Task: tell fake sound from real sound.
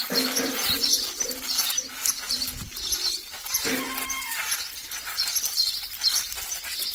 fake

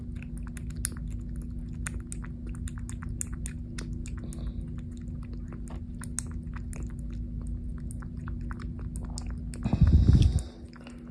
real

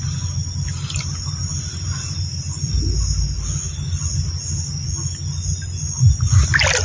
real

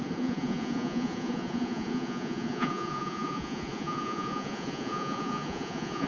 fake